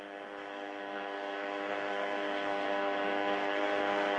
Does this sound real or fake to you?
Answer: fake